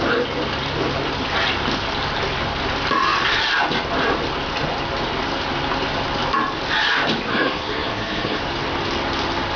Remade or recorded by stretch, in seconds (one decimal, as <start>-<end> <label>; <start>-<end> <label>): 0.0-7.3 recorded; 7.3-8.4 remade; 8.4-9.6 recorded